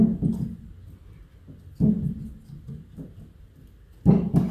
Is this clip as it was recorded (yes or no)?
yes